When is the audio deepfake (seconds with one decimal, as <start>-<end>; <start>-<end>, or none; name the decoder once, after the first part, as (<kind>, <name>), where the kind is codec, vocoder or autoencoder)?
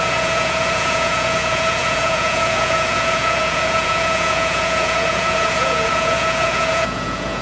0.0-7.4 (vocoder, Vocos)